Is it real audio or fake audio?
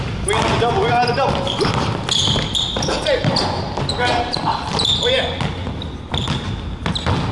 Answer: real